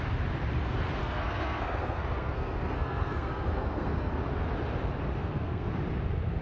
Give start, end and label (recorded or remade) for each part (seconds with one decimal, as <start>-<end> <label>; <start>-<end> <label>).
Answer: 0.0-1.0 recorded; 1.0-4.1 remade; 4.1-5.2 recorded; 5.2-5.7 remade; 5.7-6.4 recorded